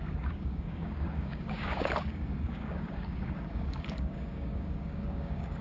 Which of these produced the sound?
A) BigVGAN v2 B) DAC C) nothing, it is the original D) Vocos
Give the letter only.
B